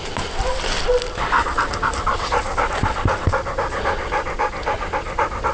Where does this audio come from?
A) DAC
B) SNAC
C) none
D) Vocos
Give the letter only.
C